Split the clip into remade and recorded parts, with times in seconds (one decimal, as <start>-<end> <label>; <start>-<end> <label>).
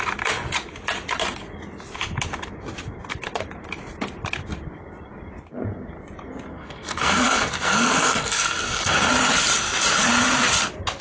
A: 0.0-6.5 recorded; 6.5-9.1 remade; 9.1-11.0 recorded